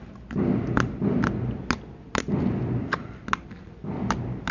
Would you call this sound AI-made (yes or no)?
no